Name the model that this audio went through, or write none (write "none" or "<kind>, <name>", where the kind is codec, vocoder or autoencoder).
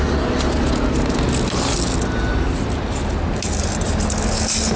none